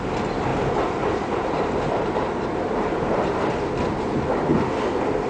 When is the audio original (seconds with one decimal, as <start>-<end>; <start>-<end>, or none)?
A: 0.0-0.5; 3.7-5.3